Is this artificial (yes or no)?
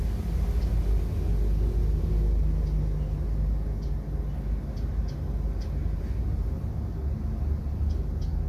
no